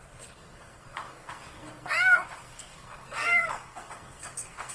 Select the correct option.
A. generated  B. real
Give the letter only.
A